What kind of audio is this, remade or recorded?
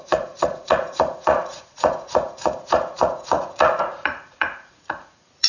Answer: remade